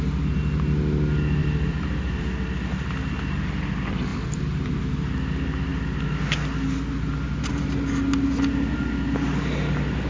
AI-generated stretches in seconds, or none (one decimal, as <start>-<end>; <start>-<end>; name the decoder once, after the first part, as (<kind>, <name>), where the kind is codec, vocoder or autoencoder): 1.4-2.2 (vocoder, BigVGAN v2); 4.1-4.8